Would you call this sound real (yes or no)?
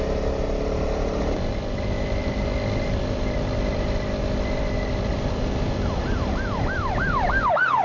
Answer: yes